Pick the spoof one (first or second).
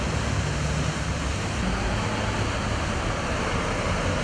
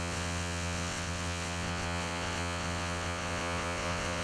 second